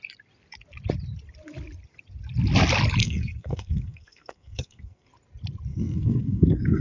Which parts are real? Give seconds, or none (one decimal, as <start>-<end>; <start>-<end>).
0.0-3.0; 5.1-5.7